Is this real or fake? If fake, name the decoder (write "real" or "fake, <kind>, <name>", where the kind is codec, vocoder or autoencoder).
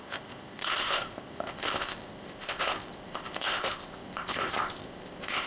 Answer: fake, codec, ZipCodec